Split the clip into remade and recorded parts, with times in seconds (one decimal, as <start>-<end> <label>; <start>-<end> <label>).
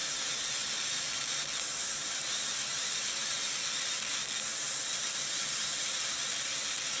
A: 0.0-7.0 recorded